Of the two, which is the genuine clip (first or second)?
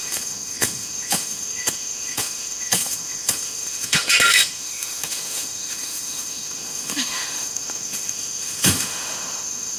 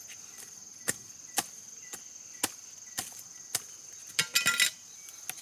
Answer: second